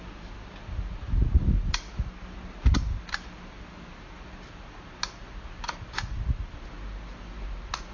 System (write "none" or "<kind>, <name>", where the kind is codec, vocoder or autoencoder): none